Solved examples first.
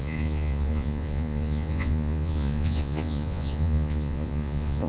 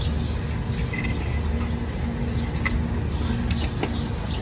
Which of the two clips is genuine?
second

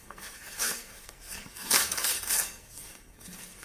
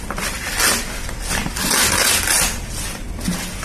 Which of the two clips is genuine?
second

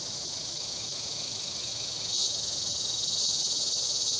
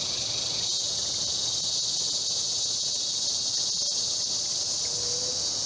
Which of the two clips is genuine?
second